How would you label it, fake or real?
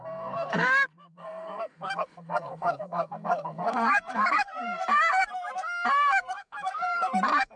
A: fake